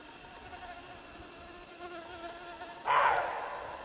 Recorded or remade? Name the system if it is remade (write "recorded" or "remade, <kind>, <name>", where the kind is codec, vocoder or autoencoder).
recorded